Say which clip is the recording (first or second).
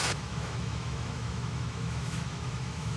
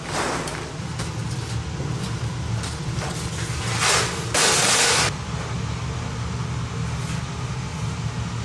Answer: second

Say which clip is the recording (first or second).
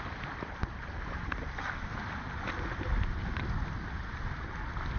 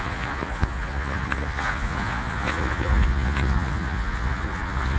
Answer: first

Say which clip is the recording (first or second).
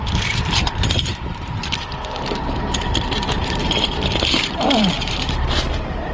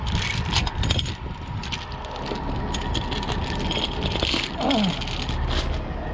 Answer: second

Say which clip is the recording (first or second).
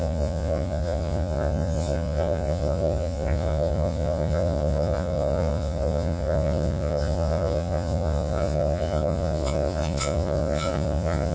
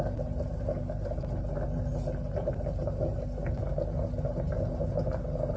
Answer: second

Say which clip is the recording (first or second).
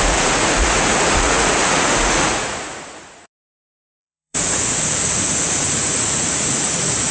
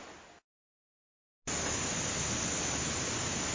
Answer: second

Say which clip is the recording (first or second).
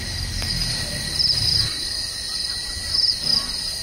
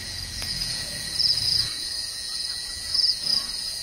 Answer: first